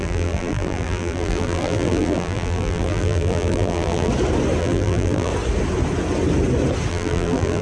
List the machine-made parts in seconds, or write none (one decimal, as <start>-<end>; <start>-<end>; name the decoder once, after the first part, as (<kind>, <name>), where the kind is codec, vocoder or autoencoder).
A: 0.0-4.1 (vocoder, BigVGAN v2); 4.6-5.3; 6.9-7.6